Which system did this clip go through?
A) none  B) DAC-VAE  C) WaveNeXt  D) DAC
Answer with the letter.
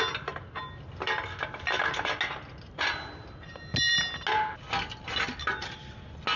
A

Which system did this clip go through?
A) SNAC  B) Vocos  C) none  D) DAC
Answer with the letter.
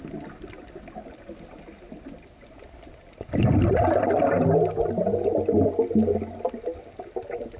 C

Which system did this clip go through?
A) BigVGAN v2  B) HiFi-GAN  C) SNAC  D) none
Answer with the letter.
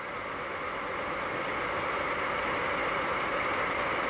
D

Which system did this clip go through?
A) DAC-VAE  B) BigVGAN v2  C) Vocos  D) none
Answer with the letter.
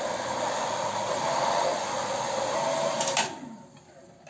D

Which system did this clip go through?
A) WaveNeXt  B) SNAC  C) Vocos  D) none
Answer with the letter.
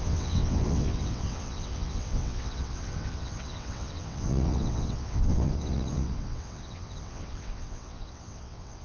A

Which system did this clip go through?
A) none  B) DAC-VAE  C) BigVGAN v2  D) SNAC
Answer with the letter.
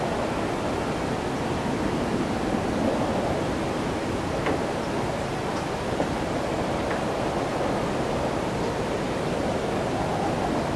A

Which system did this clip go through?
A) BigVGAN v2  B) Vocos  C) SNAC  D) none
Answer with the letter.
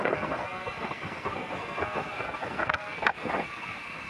C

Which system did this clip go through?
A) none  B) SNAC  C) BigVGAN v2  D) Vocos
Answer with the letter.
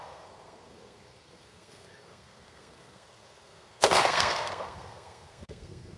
B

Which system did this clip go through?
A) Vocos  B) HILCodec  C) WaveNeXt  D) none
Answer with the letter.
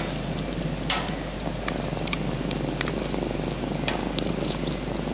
D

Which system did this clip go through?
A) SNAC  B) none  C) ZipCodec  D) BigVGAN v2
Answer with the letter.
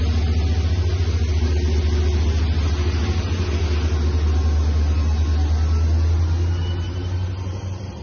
B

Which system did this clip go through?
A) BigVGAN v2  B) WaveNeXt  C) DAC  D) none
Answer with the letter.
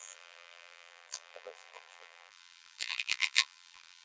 A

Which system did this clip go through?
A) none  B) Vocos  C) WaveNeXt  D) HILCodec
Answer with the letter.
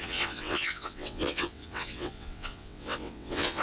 C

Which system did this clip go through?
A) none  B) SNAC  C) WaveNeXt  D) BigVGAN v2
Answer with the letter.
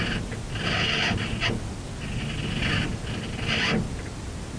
A